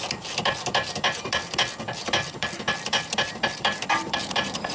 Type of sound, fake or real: fake